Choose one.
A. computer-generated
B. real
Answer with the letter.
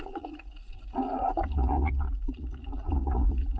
A